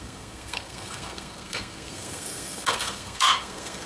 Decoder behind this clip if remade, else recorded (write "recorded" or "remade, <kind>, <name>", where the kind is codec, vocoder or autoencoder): remade, codec, SNAC